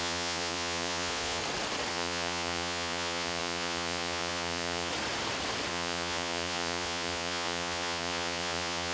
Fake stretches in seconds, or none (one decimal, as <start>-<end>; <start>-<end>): 0.0-1.4; 1.9-4.9; 5.7-8.9